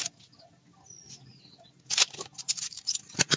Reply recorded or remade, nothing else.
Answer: recorded